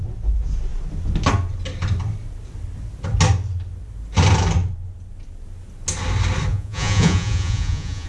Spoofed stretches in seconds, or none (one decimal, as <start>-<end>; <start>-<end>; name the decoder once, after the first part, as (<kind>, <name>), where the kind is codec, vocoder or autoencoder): 6.5-8.1 (vocoder, Vocos)